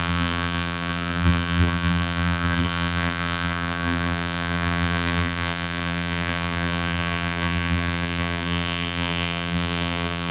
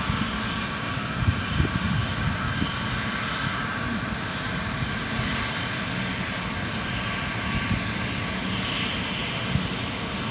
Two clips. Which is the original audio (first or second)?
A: second